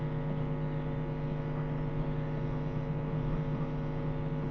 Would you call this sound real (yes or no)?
yes